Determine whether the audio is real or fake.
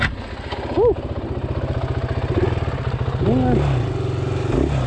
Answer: real